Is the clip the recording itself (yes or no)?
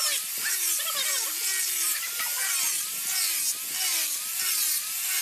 yes